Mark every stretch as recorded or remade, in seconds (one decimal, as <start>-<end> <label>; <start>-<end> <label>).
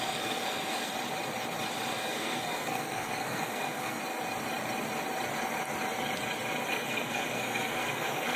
0.0-0.9 remade; 0.9-1.9 recorded; 1.9-4.0 remade; 4.0-6.7 recorded; 6.7-8.4 remade